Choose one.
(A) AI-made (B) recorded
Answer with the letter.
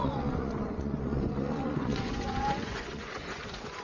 A